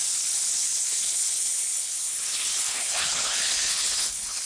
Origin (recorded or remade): remade